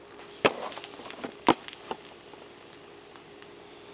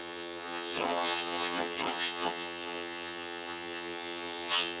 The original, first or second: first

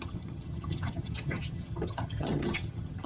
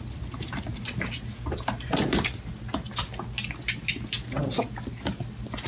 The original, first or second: second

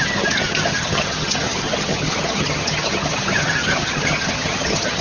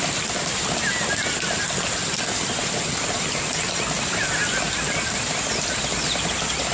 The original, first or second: second